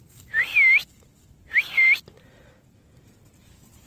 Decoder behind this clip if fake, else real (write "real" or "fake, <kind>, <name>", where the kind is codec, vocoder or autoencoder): real